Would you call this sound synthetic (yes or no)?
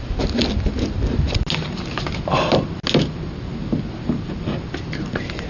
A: no